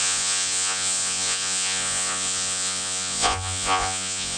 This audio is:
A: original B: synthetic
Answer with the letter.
B